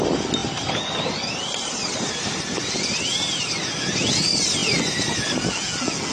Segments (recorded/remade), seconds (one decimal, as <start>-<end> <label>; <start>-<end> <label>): 0.0-6.1 recorded